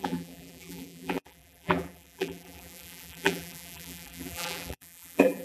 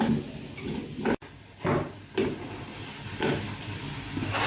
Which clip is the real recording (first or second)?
second